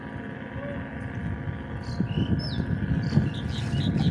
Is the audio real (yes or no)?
yes